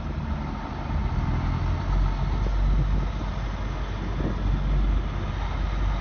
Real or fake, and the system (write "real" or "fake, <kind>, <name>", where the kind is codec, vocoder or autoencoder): real